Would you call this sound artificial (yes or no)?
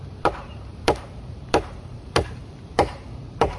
yes